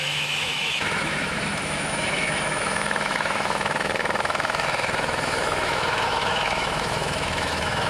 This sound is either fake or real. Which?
fake